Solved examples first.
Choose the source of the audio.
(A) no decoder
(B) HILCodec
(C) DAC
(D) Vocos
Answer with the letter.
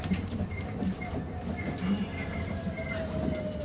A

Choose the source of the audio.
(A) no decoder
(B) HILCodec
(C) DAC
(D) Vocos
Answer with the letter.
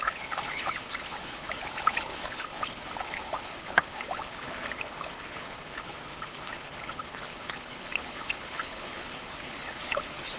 B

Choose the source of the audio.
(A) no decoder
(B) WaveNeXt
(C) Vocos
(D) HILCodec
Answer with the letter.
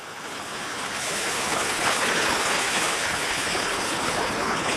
D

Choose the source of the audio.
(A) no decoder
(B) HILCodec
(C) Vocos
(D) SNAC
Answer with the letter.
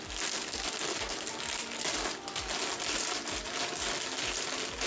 A